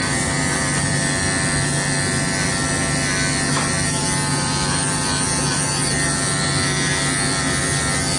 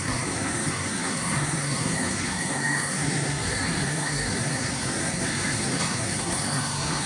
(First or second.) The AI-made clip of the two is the second